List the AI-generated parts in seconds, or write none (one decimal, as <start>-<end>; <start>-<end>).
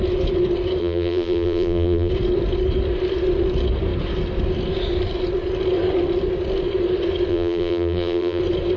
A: 0.8-2.1; 7.3-8.4